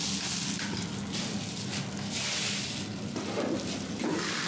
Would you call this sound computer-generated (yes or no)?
no